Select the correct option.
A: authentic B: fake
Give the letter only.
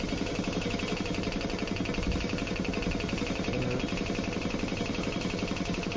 A